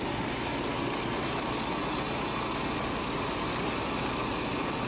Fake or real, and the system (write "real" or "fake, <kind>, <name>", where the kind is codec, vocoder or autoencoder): real